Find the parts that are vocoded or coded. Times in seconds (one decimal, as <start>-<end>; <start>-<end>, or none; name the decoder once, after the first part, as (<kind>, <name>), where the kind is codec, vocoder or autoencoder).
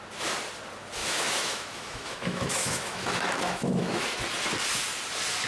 1.0-4.0 (autoencoder, DAC-VAE)